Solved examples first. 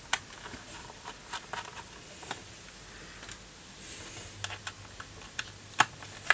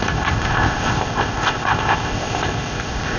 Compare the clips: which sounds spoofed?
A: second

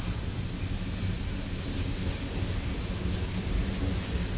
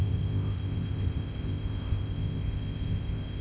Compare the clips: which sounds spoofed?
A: second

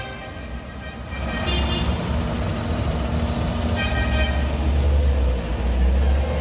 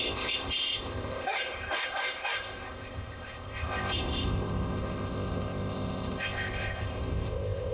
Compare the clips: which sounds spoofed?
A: second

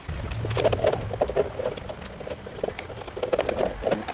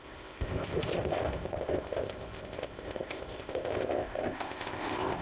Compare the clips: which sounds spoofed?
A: second